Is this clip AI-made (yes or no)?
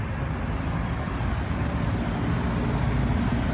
no